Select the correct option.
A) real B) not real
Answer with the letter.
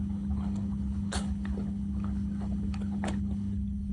B